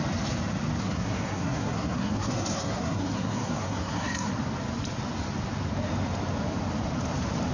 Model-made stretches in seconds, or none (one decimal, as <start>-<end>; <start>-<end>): 0.8-4.3

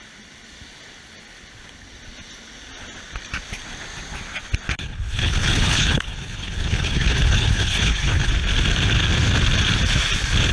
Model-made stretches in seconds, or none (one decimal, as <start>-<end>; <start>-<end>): 4.7-8.3